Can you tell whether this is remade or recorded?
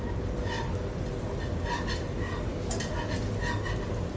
recorded